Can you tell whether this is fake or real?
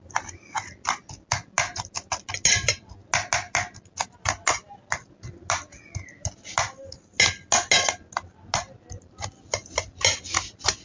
real